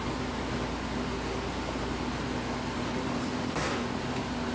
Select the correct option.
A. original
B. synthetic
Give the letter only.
A